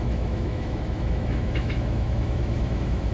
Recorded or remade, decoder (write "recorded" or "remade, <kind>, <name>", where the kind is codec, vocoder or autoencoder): remade, autoencoder, DAC-VAE